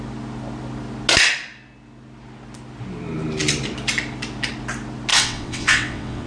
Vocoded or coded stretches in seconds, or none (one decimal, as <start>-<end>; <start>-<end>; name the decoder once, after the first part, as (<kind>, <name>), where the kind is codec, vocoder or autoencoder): 5.1-6.3 (vocoder, WaveNeXt)